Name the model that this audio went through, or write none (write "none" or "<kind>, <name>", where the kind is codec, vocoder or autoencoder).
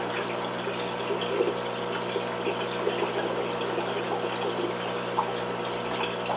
none